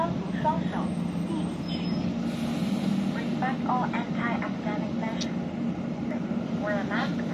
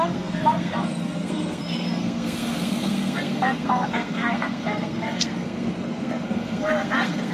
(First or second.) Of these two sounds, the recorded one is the first